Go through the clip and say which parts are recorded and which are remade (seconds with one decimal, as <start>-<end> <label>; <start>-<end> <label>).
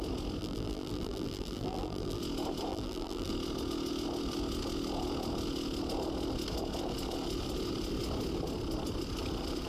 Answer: 0.0-0.4 recorded; 0.4-2.2 remade; 2.2-2.7 recorded; 2.7-3.3 remade; 3.3-9.7 recorded